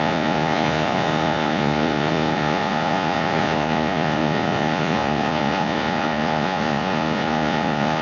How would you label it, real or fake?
fake